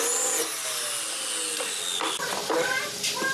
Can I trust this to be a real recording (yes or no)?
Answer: yes